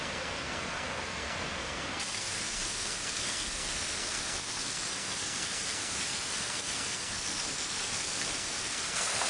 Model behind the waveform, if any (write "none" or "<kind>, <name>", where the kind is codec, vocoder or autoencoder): codec, SNAC